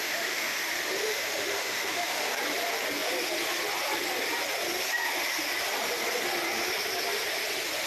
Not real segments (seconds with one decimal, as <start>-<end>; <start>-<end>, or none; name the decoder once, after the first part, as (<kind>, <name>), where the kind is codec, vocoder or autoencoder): 0.0-0.6 (autoencoder, DAC-VAE); 1.0-2.3